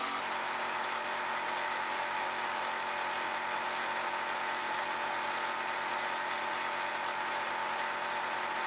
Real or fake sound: real